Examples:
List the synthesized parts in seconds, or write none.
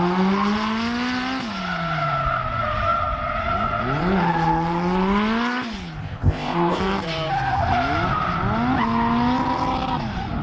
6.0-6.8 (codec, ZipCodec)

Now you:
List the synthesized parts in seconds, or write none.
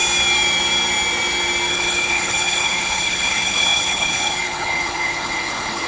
1.7-5.9 (codec, HILCodec)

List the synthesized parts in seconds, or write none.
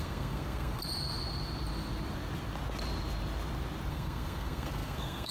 0.0-0.8 (codec, SNAC); 3.9-5.3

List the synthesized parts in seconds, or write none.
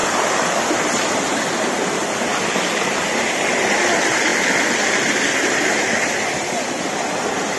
2.3-3.1 (vocoder, BigVGAN v2)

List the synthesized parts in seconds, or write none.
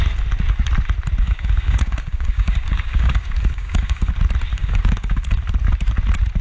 1.2-4.1 (codec, DAC); 4.5-5.4